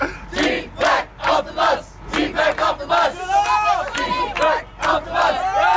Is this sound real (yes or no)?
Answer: yes